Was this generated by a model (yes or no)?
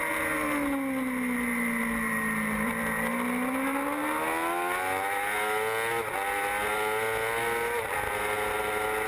no